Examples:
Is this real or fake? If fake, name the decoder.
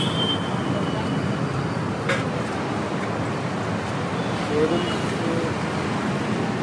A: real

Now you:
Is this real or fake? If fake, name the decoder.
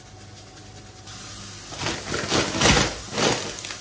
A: real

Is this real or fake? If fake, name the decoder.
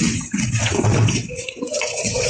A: fake, vocoder, WaveNeXt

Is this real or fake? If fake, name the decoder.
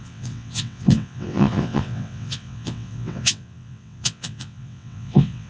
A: fake, vocoder, WaveNeXt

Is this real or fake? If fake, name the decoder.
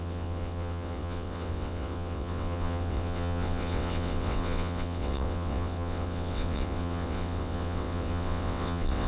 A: fake, vocoder, WaveNeXt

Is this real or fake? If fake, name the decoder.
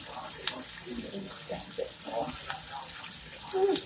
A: real